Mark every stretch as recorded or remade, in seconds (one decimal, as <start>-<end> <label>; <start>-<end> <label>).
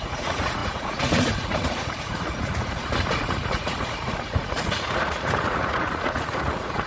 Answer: 0.0-6.9 remade